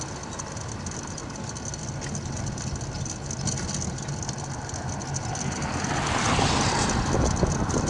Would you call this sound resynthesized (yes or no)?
no